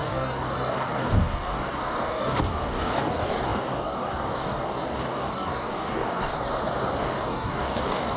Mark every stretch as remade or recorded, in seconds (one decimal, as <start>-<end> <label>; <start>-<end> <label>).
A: 0.0-6.5 remade; 6.5-7.0 recorded; 7.0-8.2 remade